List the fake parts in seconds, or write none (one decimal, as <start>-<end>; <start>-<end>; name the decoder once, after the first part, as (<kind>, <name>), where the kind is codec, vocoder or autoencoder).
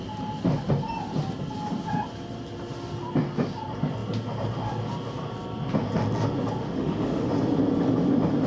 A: 6.6-7.3 (autoencoder, DAC-VAE)